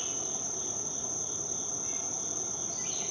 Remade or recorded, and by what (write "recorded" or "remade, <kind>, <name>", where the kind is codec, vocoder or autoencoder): recorded